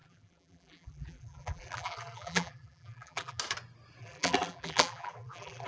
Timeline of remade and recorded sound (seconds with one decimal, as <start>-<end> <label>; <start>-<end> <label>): 0.0-3.4 remade; 3.4-4.0 recorded; 4.0-5.7 remade